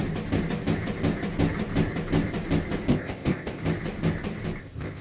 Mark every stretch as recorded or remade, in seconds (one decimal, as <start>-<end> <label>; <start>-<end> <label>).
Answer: 0.0-2.9 recorded; 2.9-3.6 remade; 3.6-4.6 recorded; 4.6-5.0 remade